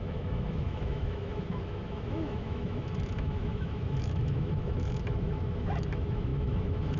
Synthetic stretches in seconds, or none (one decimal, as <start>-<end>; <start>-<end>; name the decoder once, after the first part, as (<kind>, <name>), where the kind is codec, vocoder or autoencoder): 0.0-7.0 (autoencoder, DAC-VAE)